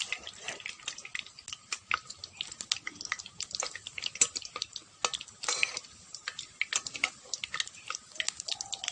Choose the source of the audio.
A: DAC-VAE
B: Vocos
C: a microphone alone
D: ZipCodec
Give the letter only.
C